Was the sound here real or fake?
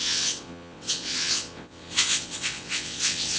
fake